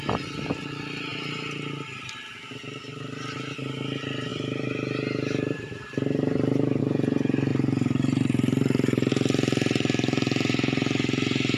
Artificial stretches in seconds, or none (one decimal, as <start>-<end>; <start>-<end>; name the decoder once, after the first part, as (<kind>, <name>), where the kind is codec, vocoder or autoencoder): 4.3-6.8 (vocoder, BigVGAN v2); 7.5-9.1